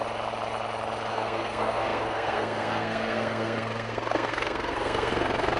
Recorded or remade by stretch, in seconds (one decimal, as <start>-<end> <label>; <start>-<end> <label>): 0.0-1.1 recorded; 1.1-5.6 remade